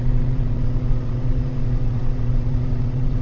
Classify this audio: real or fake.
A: fake